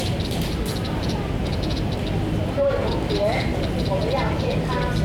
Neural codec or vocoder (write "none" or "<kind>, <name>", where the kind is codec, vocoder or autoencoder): none